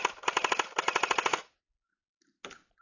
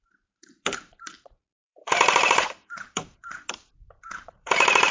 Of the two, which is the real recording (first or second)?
first